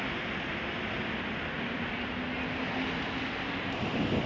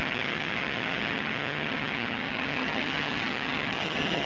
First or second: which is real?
first